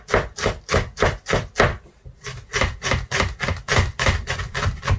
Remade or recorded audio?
recorded